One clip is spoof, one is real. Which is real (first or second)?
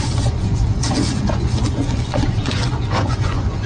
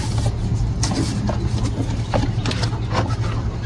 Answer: second